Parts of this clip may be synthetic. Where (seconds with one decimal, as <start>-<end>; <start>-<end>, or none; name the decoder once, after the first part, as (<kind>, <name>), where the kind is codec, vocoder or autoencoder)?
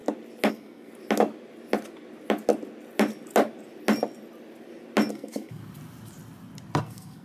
0.5-0.9 (codec, SNAC); 5.1-5.6; 6.8-7.2